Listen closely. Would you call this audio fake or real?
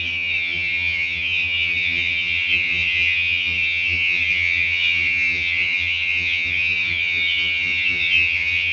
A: fake